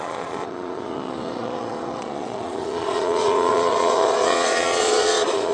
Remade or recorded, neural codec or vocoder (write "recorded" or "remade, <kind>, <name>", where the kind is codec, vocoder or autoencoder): remade, vocoder, Vocos